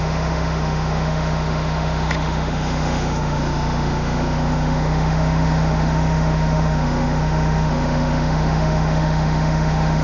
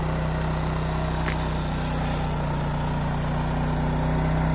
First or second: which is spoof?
first